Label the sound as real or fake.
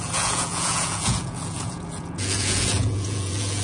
fake